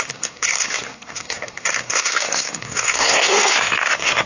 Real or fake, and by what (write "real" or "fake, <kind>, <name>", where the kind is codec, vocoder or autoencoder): fake, codec, SNAC